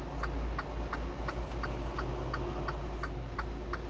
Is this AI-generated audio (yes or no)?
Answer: no